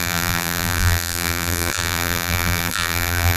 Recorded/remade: remade